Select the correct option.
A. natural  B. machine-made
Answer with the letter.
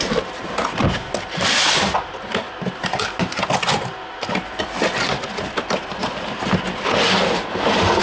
A